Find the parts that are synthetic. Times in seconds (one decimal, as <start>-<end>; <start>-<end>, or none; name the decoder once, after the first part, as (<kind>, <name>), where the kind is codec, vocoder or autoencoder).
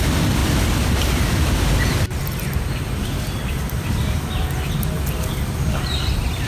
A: 0.4-2.2 (vocoder, BigVGAN v2)